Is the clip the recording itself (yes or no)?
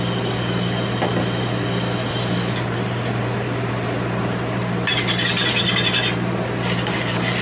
yes